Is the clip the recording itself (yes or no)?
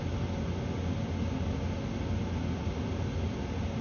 yes